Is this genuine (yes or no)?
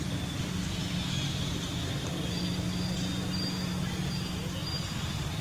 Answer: yes